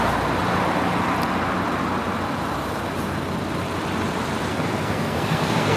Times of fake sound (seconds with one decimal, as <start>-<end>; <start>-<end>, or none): 4.5-5.8